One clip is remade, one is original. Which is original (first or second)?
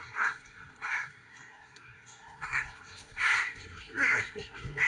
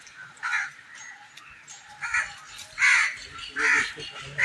second